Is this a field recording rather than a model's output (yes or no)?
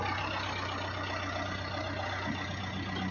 yes